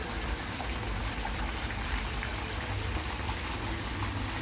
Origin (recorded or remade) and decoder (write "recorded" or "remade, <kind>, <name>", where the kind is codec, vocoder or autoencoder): recorded